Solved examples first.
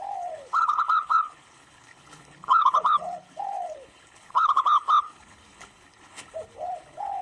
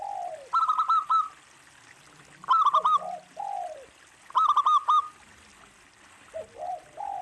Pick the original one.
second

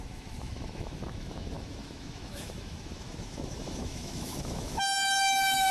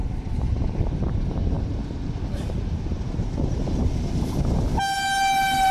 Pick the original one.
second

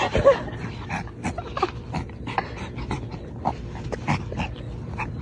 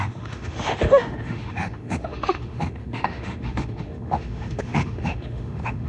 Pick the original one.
first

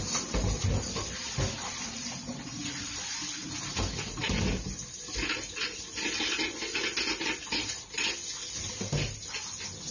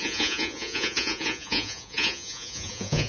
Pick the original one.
first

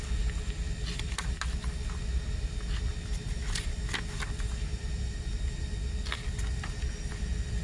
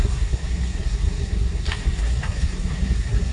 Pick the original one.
first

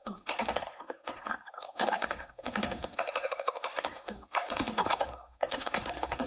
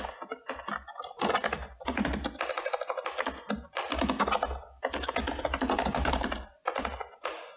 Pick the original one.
second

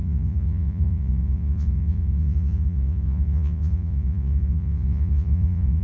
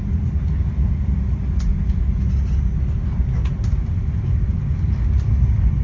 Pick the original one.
second